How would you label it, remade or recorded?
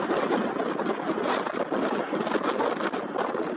recorded